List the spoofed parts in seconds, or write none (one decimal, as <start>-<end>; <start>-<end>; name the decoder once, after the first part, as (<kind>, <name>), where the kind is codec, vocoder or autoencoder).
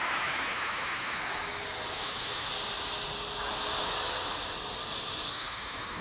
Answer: 0.0-1.2 (autoencoder, DAC-VAE); 1.9-2.5; 5.3-6.0